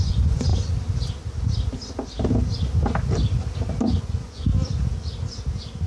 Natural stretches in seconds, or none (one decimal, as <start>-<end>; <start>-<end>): 0.5-4.0; 4.5-5.9